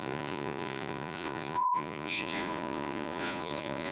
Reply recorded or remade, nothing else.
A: remade